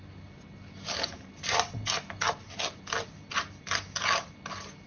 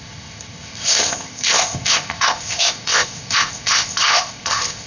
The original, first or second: first